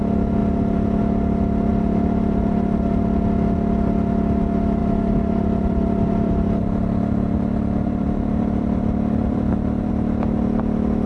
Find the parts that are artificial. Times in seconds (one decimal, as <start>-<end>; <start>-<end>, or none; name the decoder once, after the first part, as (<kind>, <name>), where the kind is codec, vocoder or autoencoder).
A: 1.7-3.0 (vocoder, BigVGAN v2); 4.8-9.9